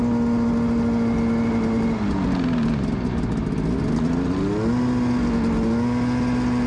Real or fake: real